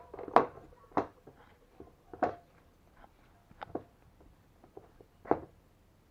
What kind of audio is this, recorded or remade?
recorded